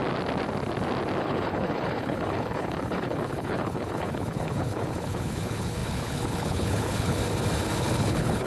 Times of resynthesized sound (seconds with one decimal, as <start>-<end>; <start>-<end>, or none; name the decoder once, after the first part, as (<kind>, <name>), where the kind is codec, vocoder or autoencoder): 1.2-7.2 (codec, HILCodec); 7.8-8.5